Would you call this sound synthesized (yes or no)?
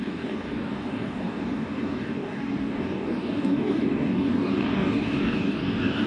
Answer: yes